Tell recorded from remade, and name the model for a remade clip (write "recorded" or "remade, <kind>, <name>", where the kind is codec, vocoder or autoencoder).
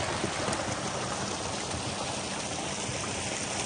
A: recorded